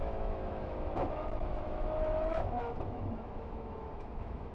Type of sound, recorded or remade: remade